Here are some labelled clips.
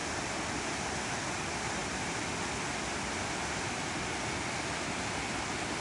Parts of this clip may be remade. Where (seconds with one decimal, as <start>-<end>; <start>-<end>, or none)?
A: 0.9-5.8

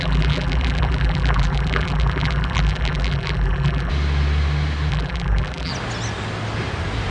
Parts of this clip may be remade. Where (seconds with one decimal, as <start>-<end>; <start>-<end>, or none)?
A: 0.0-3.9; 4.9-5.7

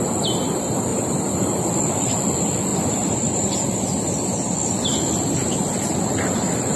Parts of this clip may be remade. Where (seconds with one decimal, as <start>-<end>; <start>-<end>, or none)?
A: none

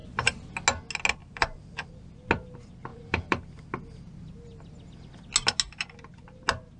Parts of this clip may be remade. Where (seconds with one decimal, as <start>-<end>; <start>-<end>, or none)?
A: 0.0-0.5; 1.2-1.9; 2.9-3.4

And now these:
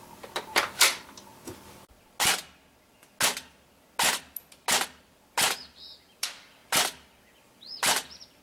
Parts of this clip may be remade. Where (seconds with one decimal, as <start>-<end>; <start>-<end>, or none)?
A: 0.0-1.3; 5.1-8.4